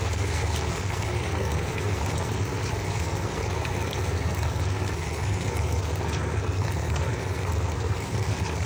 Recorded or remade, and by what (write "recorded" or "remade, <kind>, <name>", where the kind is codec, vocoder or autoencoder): remade, codec, SNAC